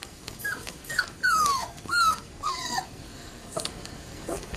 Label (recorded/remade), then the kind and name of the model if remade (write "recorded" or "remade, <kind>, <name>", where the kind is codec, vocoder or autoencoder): remade, codec, SNAC